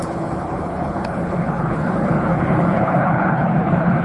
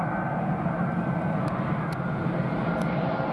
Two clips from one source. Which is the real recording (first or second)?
second